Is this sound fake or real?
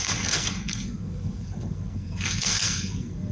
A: fake